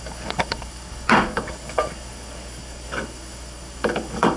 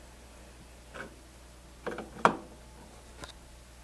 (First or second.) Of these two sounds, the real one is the second